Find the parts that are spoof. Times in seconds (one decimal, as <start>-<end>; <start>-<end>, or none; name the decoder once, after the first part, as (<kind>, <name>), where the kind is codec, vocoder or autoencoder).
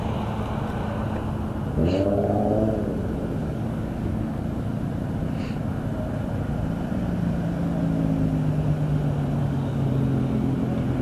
1.8-2.4 (codec, DAC); 3.4-4.4; 9.4-9.9